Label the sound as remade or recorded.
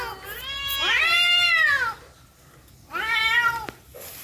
recorded